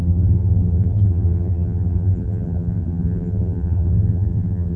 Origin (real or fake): fake